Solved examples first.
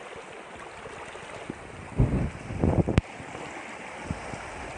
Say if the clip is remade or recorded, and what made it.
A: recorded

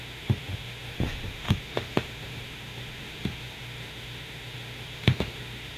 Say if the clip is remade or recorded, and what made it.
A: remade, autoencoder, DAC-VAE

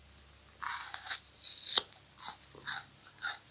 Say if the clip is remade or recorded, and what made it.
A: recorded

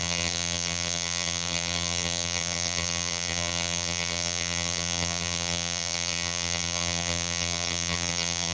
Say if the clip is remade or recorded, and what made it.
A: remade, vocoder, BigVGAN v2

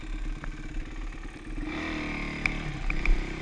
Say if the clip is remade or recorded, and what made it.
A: recorded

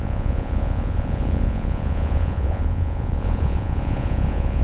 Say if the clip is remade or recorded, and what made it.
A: remade, vocoder, Vocos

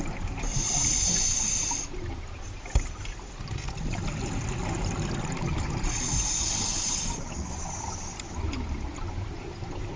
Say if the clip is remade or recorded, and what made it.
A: recorded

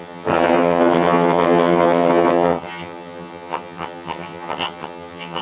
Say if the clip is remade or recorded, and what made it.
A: remade, vocoder, HiFi-GAN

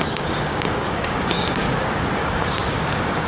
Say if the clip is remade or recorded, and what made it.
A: remade, codec, DAC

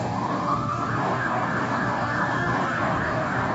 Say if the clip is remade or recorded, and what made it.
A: remade, codec, DAC